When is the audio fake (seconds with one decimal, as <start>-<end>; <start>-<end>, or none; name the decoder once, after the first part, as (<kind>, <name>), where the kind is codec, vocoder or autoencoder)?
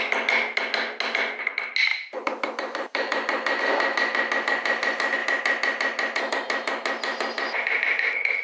1.9-3.6 (vocoder, BigVGAN v2)